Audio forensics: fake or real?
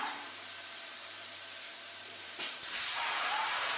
fake